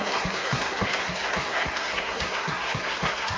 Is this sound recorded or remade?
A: remade